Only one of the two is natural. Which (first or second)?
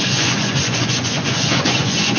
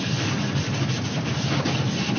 second